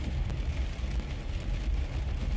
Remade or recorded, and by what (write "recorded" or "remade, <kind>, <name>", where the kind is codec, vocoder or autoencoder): recorded